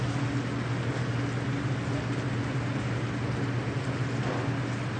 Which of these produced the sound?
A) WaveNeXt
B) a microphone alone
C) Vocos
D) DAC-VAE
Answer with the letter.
B